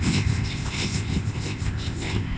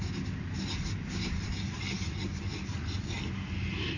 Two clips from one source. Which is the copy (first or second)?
first